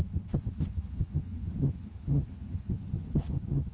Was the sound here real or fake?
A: fake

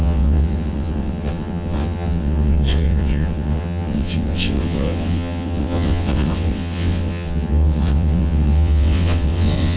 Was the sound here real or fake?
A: fake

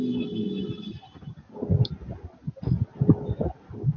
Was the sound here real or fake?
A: real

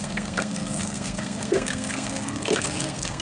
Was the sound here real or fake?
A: fake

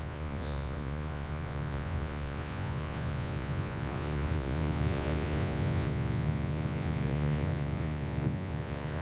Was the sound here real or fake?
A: fake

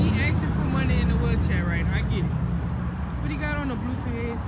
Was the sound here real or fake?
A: real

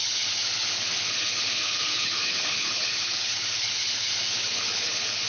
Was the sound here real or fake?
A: fake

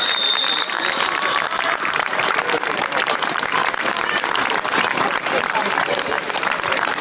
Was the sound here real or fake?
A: fake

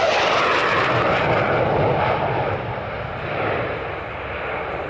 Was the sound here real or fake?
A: real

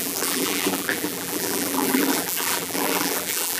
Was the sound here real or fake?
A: fake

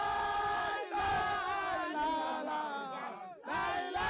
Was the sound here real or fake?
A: real